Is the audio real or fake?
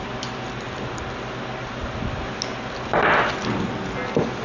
real